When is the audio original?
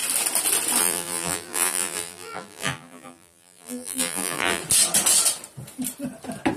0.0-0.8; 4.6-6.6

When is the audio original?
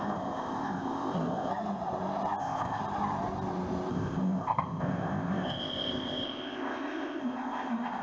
1.5-2.4; 2.8-3.9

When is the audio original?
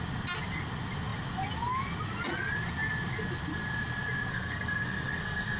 0.0-4.3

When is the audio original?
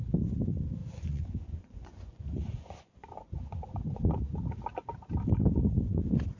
0.0-0.8; 4.1-6.4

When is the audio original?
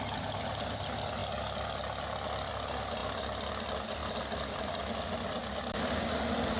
0.0-6.6